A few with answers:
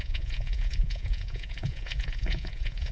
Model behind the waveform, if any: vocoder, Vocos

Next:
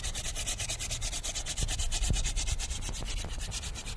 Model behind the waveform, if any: none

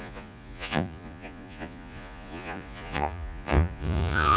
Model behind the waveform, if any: vocoder, Vocos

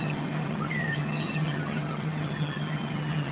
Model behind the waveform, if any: vocoder, HiFi-GAN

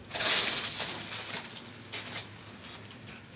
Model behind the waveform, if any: none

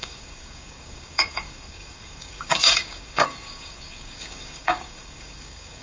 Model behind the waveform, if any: codec, DAC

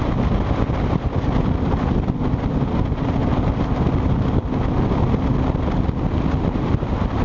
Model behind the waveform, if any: none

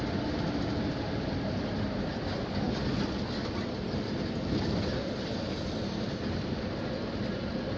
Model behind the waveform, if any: none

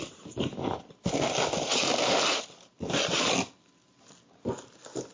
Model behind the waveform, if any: none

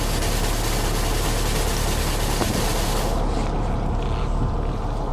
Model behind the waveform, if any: none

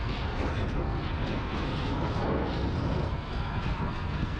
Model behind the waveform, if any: codec, SNAC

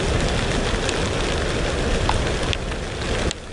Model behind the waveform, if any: none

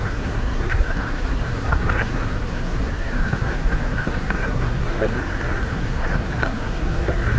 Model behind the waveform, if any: codec, SNAC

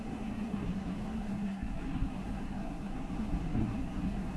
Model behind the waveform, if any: codec, SNAC